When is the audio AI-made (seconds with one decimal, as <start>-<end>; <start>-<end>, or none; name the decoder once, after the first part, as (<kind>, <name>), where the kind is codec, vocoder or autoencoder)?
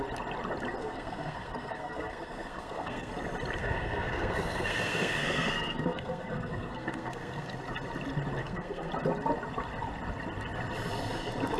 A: 0.8-3.1 (codec, SNAC); 3.6-7.5; 8.4-8.9